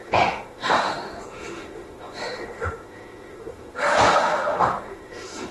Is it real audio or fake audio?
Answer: fake